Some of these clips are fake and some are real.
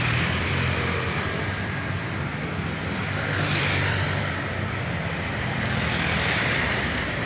fake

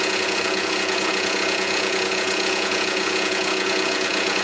fake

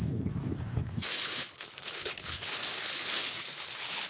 fake